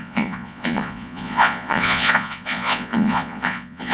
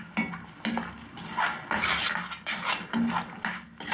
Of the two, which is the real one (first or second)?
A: second